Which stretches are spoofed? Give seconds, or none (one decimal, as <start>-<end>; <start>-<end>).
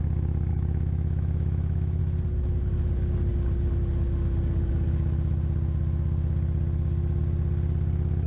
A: 0.5-2.0